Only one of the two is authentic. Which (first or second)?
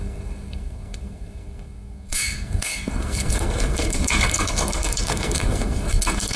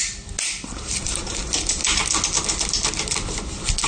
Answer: second